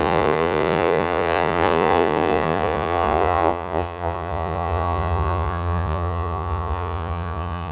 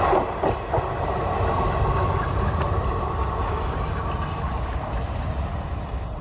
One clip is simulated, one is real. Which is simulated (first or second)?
first